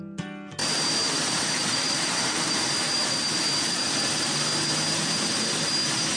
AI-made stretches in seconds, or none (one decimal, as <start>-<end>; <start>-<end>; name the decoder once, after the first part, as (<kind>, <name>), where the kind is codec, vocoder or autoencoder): 0.6-3.4 (vocoder, BigVGAN v2)